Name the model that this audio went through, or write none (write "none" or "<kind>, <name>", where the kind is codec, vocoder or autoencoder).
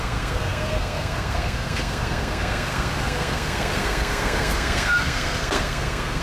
codec, SNAC